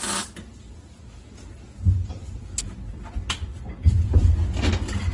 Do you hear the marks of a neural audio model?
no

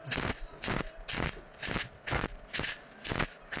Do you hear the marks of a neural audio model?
no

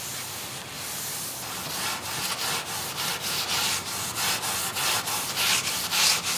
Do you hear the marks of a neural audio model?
no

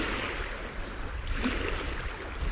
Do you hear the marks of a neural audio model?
no